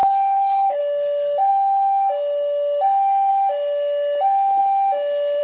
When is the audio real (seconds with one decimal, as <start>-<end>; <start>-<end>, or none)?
0.8-5.4